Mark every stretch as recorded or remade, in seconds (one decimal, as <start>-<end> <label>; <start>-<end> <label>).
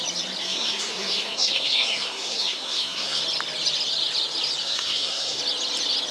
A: 0.0-0.4 recorded; 0.4-3.2 remade; 3.2-4.6 recorded; 4.6-5.4 remade; 5.4-6.1 recorded